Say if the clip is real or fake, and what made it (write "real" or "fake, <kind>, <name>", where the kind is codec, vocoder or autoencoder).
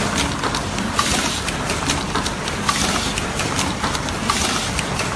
fake, vocoder, BigVGAN v2